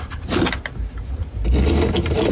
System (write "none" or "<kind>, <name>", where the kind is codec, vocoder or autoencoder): none